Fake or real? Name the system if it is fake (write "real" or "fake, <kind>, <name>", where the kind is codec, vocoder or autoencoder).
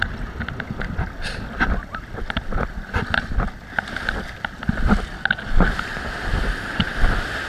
real